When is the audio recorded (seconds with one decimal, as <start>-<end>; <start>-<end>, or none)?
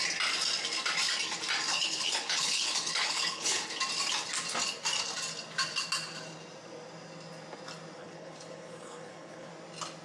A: 0.0-1.7; 3.8-8.0; 9.5-10.0